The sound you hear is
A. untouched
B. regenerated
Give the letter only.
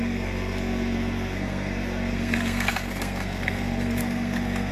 B